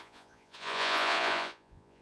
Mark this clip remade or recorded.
remade